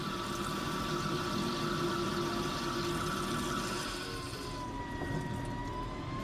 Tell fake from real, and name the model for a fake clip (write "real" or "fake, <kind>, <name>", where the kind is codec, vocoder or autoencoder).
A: real